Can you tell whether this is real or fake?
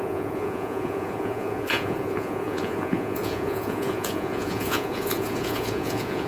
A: fake